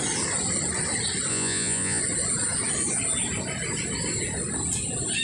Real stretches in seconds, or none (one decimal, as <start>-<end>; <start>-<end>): 0.0-1.3; 2.0-5.2